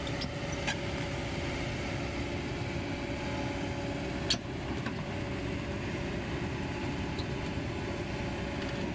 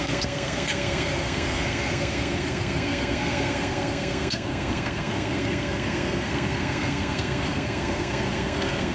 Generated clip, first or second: second